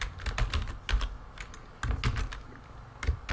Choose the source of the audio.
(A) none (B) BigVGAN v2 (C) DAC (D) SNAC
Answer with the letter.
A